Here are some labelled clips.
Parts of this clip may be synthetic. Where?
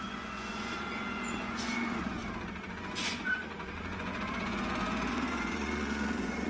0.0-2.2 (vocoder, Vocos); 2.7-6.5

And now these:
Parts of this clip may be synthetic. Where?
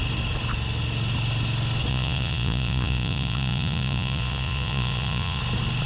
1.9-5.4 (vocoder, Vocos)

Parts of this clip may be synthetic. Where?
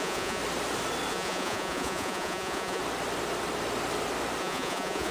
0.0-0.4 (vocoder, Vocos); 1.1-2.8; 4.4-5.1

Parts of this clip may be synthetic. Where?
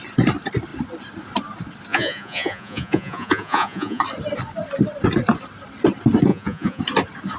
1.9-4.0 (vocoder, Vocos); 6.3-6.8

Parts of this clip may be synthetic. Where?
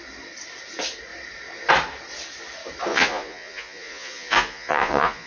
2.9-5.3 (vocoder, Vocos)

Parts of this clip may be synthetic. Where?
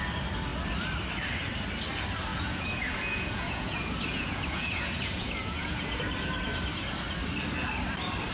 2.3-6.0 (vocoder, Vocos)